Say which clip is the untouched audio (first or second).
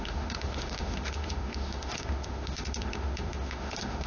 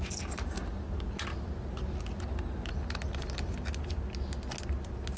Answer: second